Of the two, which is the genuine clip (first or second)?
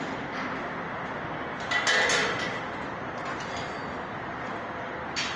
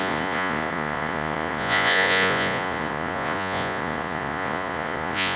first